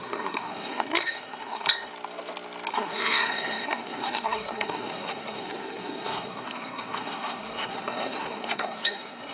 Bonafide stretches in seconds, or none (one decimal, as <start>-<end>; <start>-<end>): 1.9-2.7